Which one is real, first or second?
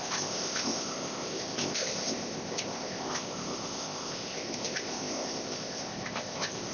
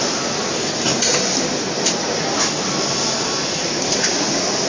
second